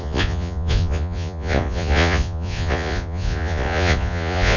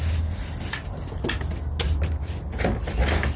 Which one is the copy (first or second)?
first